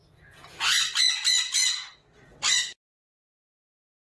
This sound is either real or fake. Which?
real